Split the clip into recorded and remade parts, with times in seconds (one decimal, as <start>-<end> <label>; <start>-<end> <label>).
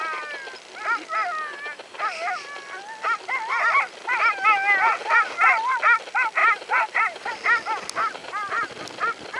0.0-6.4 recorded; 6.4-7.3 remade; 7.3-8.2 recorded; 8.2-8.7 remade; 8.7-9.4 recorded